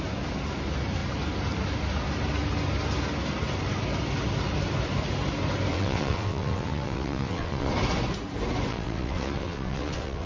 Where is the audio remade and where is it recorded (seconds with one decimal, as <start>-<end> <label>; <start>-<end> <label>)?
0.0-5.7 recorded; 5.7-7.7 remade; 7.7-8.7 recorded; 8.7-10.3 remade